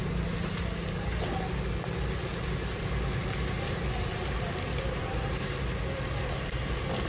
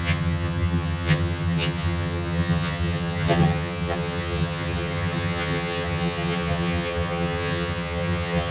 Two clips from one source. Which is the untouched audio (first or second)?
first